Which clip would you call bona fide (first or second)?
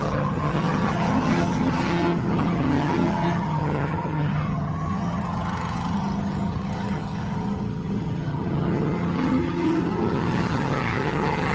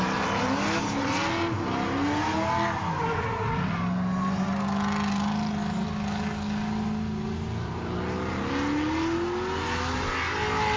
second